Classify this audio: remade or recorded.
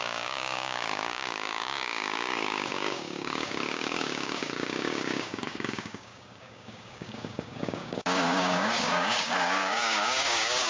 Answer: remade